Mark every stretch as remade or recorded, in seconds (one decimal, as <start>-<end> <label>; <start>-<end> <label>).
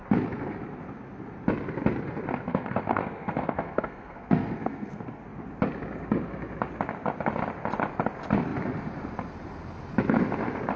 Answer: 0.0-2.5 recorded; 2.5-5.2 remade; 5.2-10.8 recorded